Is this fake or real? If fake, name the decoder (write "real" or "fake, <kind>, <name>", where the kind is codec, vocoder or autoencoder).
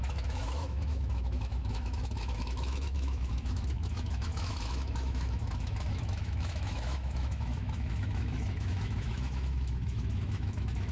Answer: fake, autoencoder, DAC-VAE